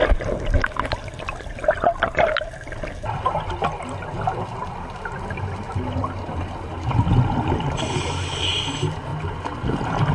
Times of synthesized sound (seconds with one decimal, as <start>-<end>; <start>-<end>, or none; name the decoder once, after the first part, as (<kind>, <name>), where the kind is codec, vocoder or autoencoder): none